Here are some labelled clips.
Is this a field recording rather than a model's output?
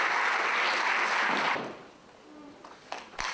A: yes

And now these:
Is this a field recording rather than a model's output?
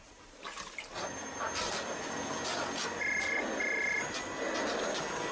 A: yes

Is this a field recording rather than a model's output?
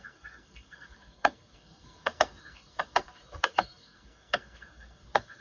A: no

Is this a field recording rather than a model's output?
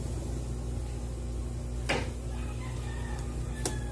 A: yes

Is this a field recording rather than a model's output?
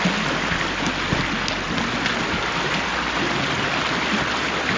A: yes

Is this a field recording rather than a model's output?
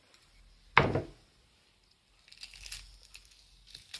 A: yes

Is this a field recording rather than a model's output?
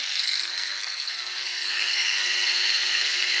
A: no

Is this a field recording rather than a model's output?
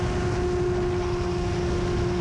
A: yes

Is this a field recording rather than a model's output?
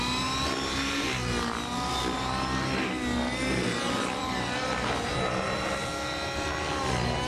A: yes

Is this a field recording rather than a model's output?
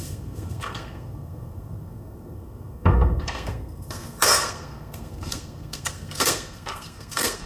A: no